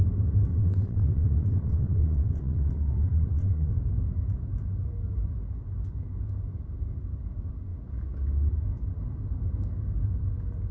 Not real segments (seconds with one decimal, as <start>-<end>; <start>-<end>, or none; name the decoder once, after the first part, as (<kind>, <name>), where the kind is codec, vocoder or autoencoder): 0.5-3.7 (vocoder, WaveNeXt)